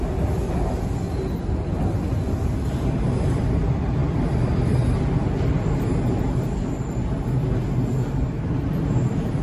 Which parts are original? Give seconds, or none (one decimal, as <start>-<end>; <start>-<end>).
0.0-9.4